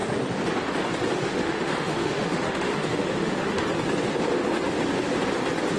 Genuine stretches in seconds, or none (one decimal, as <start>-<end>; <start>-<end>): 0.0-1.3; 3.7-5.8